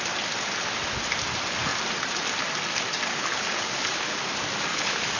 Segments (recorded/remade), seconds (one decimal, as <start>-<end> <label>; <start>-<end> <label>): 0.0-3.1 recorded; 3.1-4.2 remade; 4.2-4.7 recorded; 4.7-5.2 remade